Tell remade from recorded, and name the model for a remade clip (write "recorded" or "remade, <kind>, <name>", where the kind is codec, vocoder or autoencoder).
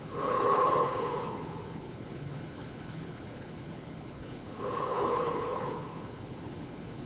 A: remade, codec, HILCodec